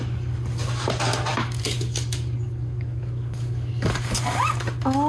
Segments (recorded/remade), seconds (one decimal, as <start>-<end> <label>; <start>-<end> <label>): 0.0-1.3 recorded; 1.3-4.4 remade; 4.4-5.1 recorded